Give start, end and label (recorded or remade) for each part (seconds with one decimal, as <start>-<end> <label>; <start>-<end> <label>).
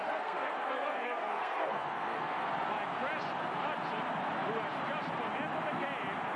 0.0-2.5 remade; 2.5-6.4 recorded